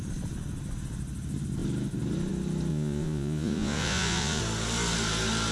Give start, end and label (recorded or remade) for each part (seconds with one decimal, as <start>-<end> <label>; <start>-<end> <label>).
0.0-2.7 recorded; 2.7-4.4 remade; 4.4-5.5 recorded